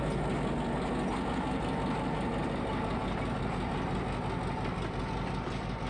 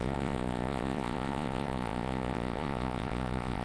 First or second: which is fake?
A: second